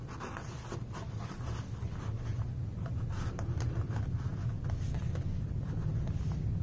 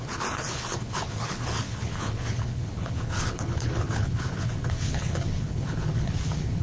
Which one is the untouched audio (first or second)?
first